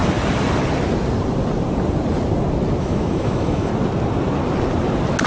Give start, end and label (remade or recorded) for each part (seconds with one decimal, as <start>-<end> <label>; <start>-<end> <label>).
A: 0.0-2.8 recorded; 2.8-3.7 remade; 3.7-5.3 recorded